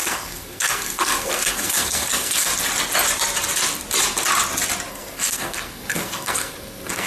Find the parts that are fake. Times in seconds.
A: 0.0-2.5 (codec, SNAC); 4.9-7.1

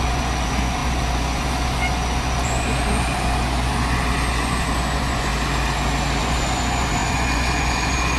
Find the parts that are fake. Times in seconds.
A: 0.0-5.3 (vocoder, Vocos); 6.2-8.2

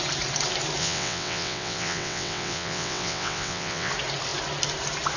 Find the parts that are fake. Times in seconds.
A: 0.8-3.9 (vocoder, WaveNeXt)